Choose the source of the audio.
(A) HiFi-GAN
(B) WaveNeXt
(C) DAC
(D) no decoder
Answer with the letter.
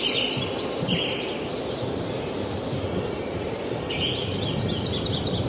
D